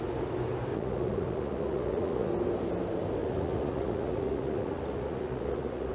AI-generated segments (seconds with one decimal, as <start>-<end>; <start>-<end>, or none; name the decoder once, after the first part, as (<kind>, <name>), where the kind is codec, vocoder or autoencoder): 0.7-2.3 (vocoder, Vocos); 3.2-5.9